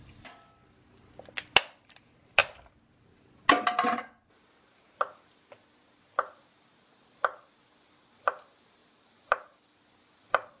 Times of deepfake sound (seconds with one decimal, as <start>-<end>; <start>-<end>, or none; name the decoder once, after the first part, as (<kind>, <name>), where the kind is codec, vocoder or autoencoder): none